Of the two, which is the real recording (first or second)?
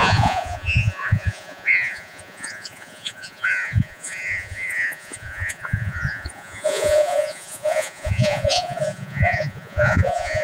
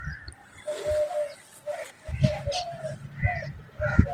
second